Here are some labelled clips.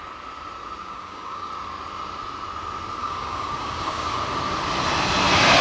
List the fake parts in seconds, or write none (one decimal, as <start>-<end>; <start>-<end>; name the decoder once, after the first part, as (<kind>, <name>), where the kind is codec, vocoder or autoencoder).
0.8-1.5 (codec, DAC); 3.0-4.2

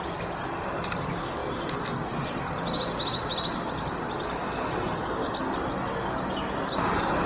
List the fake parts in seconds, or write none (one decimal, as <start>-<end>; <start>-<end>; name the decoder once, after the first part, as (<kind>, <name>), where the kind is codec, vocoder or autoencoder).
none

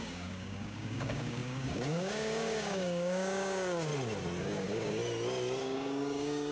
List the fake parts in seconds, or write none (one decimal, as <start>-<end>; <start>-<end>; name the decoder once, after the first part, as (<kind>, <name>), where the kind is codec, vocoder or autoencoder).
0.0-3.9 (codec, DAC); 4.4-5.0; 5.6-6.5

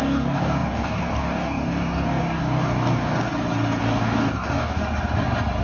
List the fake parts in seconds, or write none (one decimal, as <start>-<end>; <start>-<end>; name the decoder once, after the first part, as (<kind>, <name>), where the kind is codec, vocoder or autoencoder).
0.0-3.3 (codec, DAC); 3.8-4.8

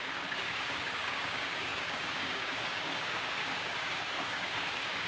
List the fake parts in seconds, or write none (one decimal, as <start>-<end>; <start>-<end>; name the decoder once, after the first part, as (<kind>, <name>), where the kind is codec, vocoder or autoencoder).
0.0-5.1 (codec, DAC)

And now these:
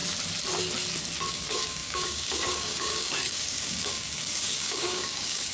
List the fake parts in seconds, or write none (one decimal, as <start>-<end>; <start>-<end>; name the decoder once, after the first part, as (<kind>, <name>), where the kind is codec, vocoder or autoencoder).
1.3-5.5 (codec, DAC)

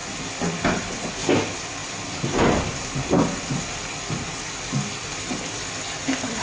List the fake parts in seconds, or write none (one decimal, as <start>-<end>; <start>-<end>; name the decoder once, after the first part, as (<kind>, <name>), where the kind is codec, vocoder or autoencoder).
none